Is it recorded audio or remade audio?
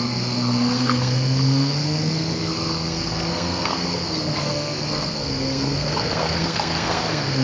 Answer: remade